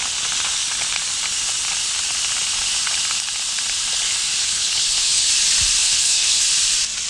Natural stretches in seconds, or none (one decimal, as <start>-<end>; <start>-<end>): 0.0-4.4; 5.3-5.8; 6.4-7.1